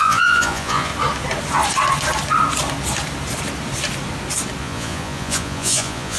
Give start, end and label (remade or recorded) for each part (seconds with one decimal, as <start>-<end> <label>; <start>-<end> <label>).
0.0-0.9 remade; 0.9-4.6 recorded; 4.6-6.2 remade

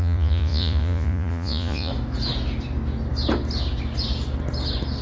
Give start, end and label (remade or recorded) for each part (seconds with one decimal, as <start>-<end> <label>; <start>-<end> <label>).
0.0-1.9 remade; 1.9-5.0 recorded

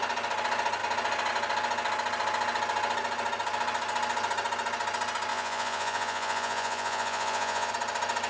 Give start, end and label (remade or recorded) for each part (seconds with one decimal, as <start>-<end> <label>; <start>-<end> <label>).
0.0-5.3 recorded; 5.3-7.7 remade; 7.7-8.3 recorded

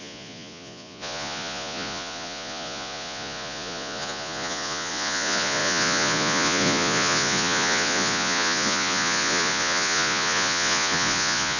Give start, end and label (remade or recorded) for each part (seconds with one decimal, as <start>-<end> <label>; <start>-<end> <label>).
0.0-11.6 remade

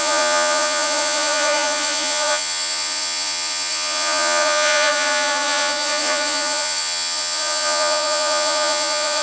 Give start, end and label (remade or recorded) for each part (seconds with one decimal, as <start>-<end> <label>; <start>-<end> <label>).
0.0-9.2 remade

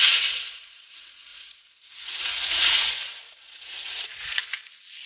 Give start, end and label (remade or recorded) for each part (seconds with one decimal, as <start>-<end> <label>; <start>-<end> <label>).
0.0-4.4 remade; 4.4-5.1 recorded

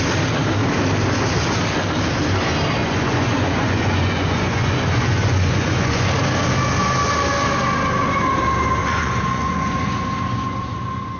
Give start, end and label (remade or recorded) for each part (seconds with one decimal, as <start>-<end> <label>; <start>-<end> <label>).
0.0-2.8 recorded; 2.8-6.1 remade; 6.1-8.8 recorded; 8.8-11.2 remade